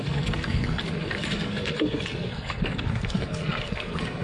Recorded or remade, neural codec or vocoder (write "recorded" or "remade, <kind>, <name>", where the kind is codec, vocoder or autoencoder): remade, codec, SNAC